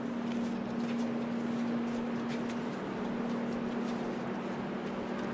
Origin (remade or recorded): recorded